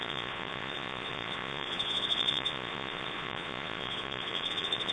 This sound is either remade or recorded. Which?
remade